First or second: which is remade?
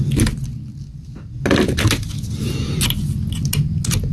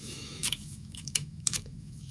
second